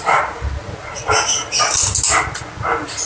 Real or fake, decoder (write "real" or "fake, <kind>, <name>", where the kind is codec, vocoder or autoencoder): real